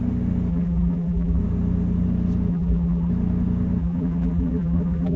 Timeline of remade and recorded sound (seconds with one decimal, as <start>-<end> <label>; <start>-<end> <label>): 0.0-0.5 recorded; 0.5-1.4 remade; 1.4-2.5 recorded; 2.5-3.1 remade; 3.1-3.8 recorded; 3.8-5.2 remade